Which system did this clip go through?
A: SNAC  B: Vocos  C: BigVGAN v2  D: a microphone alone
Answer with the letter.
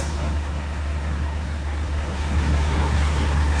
A